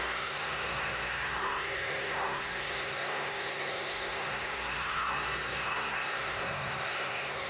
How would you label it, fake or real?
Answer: fake